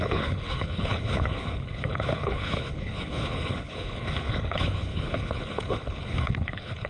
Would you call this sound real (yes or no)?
no